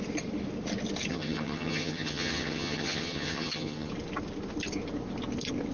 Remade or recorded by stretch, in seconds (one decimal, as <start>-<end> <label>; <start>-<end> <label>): 0.0-1.1 recorded; 1.1-3.9 remade; 3.9-5.7 recorded